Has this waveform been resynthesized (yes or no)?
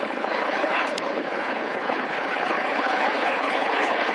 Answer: yes